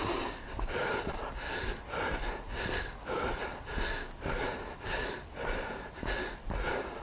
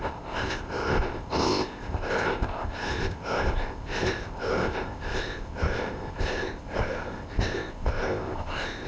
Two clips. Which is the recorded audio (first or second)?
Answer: first